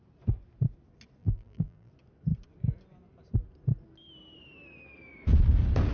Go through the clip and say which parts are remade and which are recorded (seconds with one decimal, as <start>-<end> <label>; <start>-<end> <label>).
0.0-1.2 recorded; 1.2-1.9 remade; 1.9-5.9 recorded